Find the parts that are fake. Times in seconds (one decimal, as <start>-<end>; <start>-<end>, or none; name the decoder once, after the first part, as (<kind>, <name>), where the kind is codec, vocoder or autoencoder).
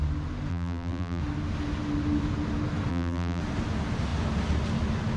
0.5-1.2 (vocoder, BigVGAN v2); 2.9-3.4